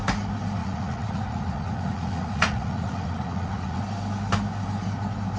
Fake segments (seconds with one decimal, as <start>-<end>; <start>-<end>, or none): 0.6-3.8